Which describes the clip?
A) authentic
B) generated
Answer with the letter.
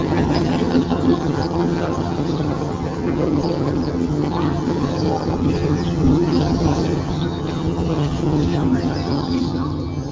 B